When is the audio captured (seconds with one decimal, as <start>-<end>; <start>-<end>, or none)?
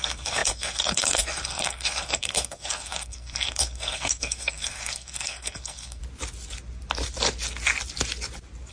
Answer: 6.0-8.7